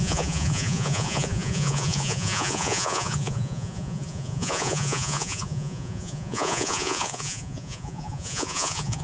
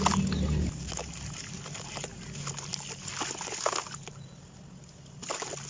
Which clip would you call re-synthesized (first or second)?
first